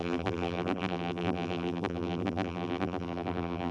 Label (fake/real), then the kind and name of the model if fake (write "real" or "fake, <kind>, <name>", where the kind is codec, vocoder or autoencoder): fake, vocoder, BigVGAN v2